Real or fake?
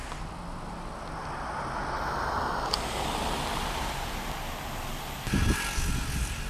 real